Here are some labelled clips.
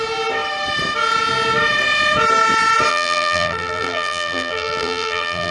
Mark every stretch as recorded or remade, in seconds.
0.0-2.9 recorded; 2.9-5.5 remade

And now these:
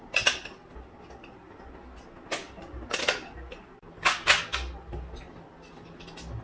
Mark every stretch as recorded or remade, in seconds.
0.0-6.4 recorded

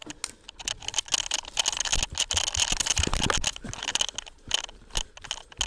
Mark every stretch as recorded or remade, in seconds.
0.0-5.7 recorded

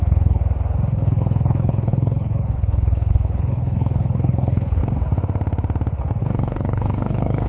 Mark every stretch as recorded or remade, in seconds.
0.0-0.4 remade; 0.4-0.9 recorded; 0.9-4.8 remade; 4.8-6.2 recorded; 6.2-7.5 remade

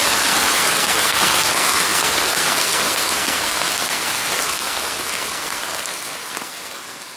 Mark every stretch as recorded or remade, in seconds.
0.0-7.2 remade

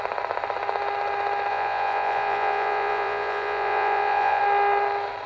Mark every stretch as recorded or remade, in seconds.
0.0-1.5 recorded; 1.5-4.4 remade; 4.4-5.3 recorded

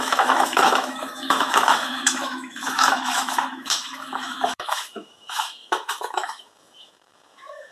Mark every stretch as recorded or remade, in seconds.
0.0-7.7 remade